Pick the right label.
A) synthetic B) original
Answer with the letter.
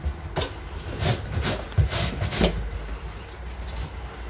B